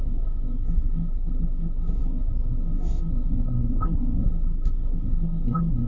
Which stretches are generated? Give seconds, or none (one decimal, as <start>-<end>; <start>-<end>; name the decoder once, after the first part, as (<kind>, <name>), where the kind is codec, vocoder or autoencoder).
0.0-5.9 (codec, SNAC)